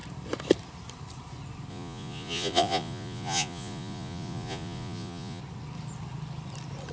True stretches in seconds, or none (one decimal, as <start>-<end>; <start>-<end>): 0.0-1.7; 5.4-6.9